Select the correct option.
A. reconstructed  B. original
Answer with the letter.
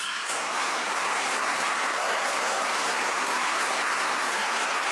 A